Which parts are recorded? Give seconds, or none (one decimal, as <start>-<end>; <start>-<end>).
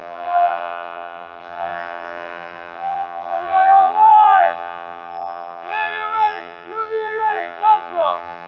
none